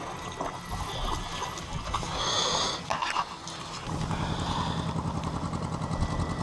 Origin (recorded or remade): recorded